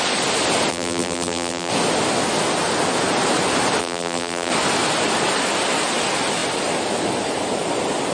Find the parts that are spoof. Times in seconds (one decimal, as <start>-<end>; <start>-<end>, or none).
0.7-1.7; 3.8-4.5